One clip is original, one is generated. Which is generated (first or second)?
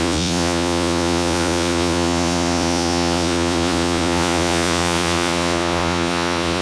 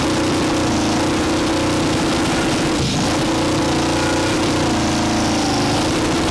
first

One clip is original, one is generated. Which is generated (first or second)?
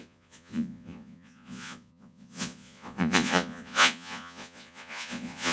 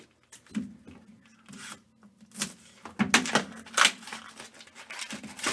first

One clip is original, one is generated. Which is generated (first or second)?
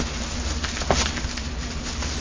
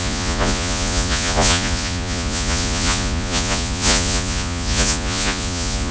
second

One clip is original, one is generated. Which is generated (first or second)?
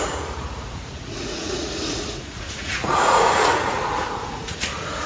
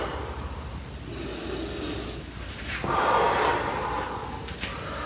first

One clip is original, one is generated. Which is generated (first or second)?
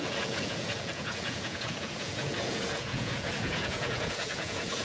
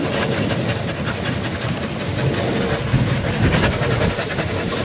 first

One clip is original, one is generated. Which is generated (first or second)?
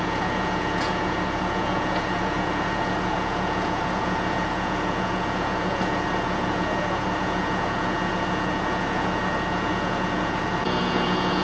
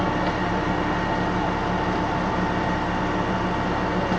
first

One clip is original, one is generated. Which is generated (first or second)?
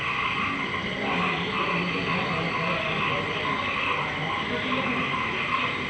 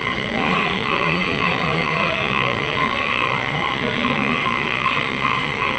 second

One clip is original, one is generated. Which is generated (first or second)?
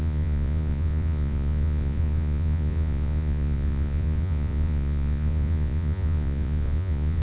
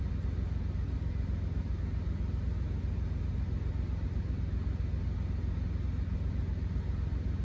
first